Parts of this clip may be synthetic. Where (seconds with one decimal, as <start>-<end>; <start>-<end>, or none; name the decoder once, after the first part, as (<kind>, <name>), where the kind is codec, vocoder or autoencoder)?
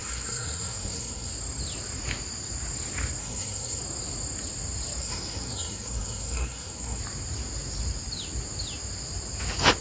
0.0-1.3 (codec, SNAC); 3.2-3.8; 5.0-7.0